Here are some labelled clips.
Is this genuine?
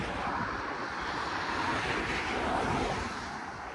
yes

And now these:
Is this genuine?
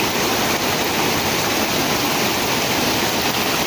yes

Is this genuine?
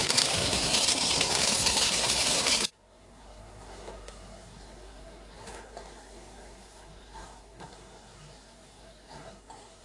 no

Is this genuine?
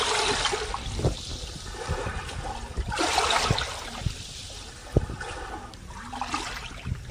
yes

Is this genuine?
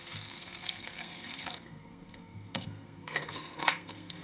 no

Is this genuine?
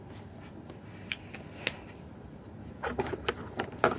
yes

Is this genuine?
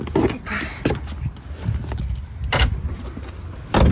yes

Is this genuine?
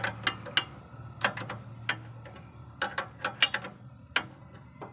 yes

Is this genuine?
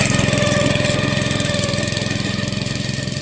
yes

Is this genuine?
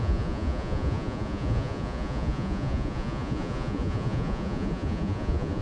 no